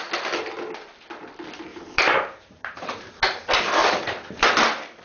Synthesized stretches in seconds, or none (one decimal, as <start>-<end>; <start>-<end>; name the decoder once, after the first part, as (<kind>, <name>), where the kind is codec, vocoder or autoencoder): 1.7-3.1 (vocoder, BigVGAN v2); 3.8-4.4